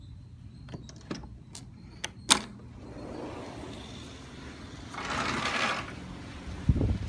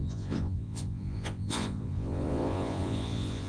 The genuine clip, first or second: first